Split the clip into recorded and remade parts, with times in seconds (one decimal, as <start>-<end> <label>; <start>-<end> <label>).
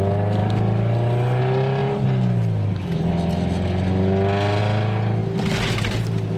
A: 0.0-6.4 recorded